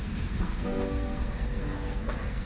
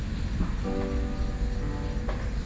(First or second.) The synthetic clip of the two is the first